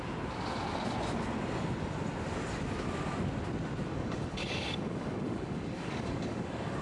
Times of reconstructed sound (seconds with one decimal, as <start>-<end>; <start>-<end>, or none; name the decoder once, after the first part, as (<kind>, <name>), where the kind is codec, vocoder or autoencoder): 3.9-6.8 (codec, DAC)